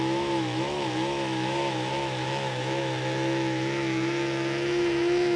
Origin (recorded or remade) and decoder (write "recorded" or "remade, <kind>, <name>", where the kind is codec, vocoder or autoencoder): remade, autoencoder, DAC-VAE